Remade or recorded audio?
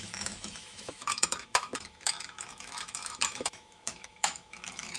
remade